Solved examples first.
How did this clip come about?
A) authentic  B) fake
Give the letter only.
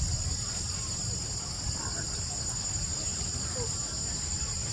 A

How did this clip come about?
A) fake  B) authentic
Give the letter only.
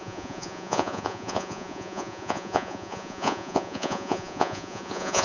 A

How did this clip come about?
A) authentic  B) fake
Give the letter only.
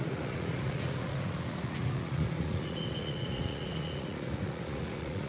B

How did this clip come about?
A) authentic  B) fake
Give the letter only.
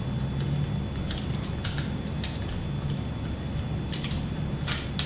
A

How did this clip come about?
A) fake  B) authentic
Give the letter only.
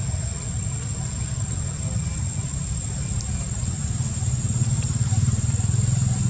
B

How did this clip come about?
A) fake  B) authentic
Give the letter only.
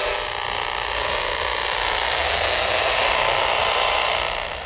B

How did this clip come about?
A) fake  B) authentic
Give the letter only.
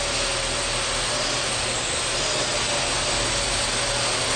B